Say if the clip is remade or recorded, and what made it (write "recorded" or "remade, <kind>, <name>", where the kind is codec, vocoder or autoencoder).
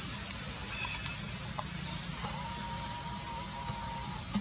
recorded